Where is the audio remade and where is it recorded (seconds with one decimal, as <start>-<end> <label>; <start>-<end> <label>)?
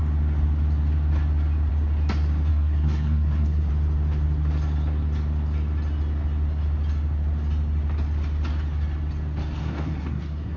0.0-2.5 recorded; 2.5-3.7 remade; 3.7-9.6 recorded; 9.6-10.6 remade